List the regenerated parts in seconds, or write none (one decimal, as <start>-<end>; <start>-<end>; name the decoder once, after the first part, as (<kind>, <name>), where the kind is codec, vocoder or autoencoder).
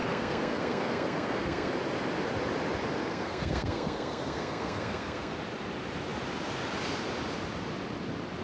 0.0-1.7 (codec, SNAC); 3.0-5.4